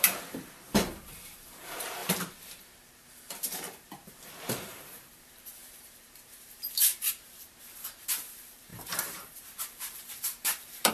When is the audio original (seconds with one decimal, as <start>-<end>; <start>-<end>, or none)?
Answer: none